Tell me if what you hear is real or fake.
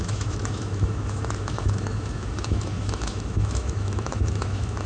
fake